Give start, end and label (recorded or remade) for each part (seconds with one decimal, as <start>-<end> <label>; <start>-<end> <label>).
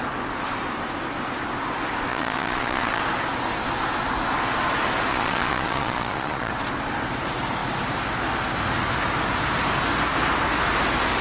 0.0-2.1 recorded; 2.1-3.0 remade; 3.0-5.1 recorded; 5.1-6.5 remade; 6.5-11.2 recorded